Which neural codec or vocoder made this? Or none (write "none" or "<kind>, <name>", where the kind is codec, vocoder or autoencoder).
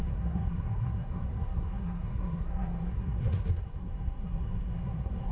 codec, SNAC